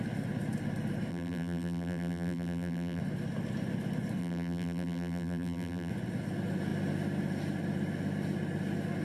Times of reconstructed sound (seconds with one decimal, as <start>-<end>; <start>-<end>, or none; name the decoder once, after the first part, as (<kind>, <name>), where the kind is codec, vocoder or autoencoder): 1.1-3.0 (vocoder, BigVGAN v2); 4.2-5.9